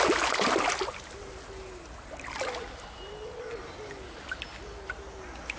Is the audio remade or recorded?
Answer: recorded